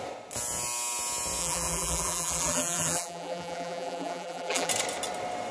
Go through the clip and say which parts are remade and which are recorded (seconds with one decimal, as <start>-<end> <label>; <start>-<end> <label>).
0.0-1.4 recorded; 1.4-4.7 remade; 4.7-5.5 recorded